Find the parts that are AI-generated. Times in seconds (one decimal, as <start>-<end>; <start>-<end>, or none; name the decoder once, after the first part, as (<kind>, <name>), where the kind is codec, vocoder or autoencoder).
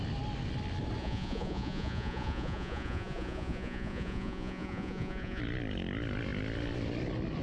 1.0-5.4 (vocoder, Vocos)